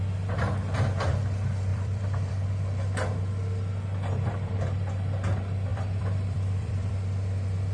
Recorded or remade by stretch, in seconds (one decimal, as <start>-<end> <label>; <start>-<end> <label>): 0.0-1.7 recorded; 1.7-2.3 remade; 2.3-5.7 recorded; 5.7-6.9 remade; 6.9-7.7 recorded